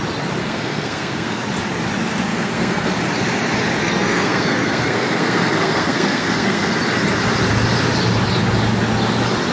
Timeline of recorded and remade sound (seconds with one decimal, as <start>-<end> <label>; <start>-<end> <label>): 0.0-0.4 recorded; 0.4-1.4 remade; 1.4-2.3 recorded; 2.3-2.9 remade; 2.9-3.8 recorded; 3.8-6.7 remade; 6.7-9.5 recorded